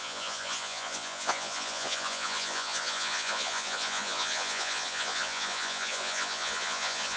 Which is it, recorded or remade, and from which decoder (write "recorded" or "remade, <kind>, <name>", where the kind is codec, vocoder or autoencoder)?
remade, vocoder, Vocos